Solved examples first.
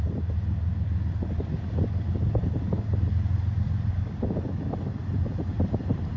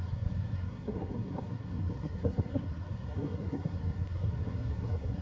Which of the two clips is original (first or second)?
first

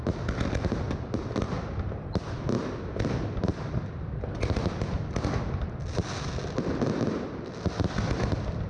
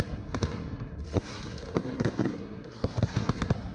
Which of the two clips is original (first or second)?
first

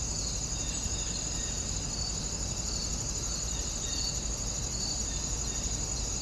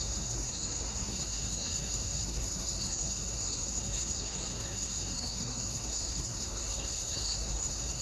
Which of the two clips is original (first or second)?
first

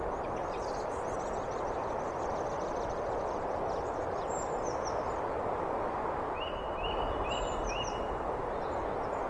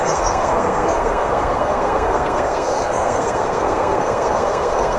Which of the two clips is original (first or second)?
first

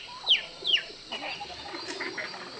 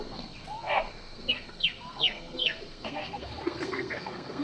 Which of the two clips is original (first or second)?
first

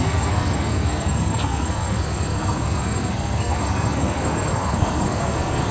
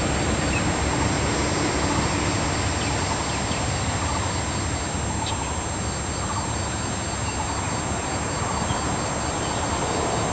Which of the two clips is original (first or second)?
second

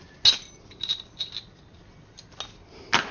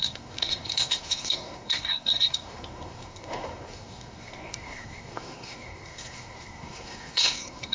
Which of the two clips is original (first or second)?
first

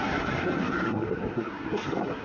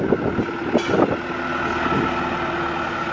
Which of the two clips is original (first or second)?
second